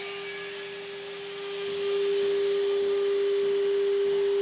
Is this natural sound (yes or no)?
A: yes